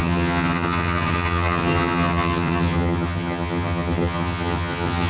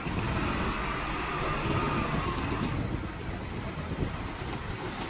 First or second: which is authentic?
second